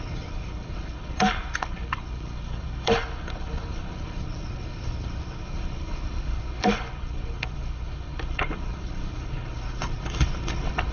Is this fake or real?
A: fake